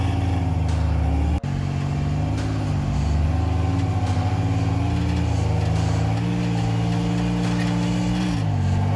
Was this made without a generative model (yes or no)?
yes